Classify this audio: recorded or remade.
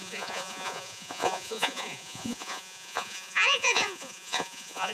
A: remade